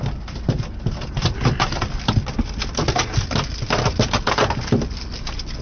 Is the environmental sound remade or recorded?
recorded